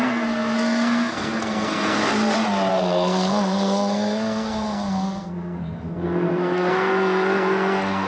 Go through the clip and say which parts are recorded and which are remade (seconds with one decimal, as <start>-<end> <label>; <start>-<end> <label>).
0.0-2.0 remade; 2.0-2.7 recorded; 2.7-8.1 remade